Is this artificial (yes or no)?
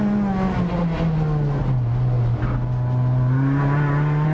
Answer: no